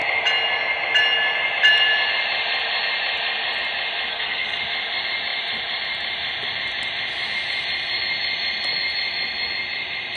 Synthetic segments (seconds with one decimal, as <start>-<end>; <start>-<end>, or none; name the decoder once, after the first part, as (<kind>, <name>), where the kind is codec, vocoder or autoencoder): 4.1-4.6 (codec, SNAC)